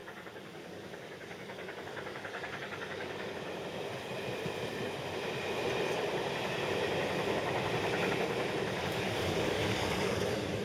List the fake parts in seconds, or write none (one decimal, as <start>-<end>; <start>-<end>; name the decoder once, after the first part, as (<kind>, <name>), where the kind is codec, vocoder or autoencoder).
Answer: 0.0-3.3 (codec, DAC); 8.8-10.6